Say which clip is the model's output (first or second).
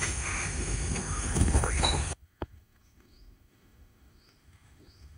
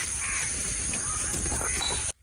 first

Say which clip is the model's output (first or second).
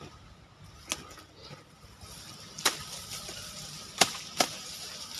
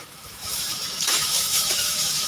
second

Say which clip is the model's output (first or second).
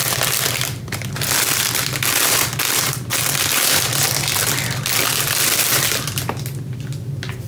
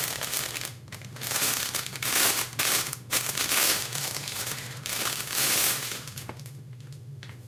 second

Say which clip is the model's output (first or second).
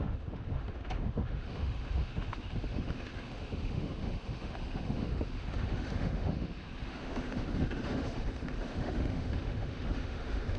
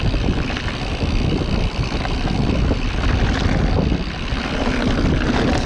first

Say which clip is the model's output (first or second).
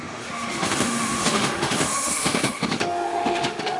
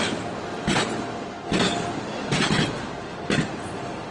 first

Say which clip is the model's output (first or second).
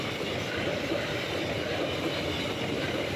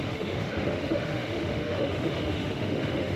second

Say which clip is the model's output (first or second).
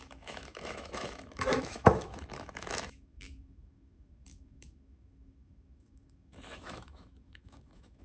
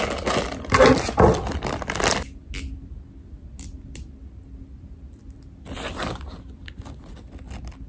first